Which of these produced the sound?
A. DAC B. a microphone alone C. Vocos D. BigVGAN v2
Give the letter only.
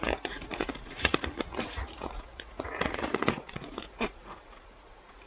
C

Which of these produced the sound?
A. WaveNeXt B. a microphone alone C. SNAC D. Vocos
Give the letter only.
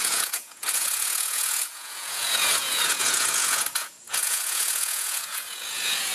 D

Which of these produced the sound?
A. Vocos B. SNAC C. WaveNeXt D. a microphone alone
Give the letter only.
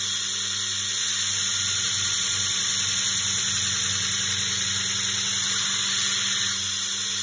D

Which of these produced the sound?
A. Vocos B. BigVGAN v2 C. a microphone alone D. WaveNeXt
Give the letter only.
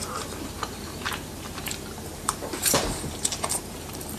B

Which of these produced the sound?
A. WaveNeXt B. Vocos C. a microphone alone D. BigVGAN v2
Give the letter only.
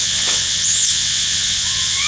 A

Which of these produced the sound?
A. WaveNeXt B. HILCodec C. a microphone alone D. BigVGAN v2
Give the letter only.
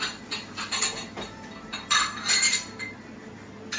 C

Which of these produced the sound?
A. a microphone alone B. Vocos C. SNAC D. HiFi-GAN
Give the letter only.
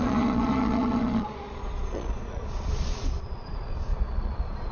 B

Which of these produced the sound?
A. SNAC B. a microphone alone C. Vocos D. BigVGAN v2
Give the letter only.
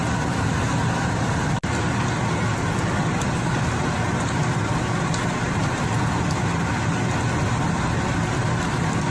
B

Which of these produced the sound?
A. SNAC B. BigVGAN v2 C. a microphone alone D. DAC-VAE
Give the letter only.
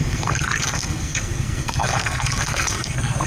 A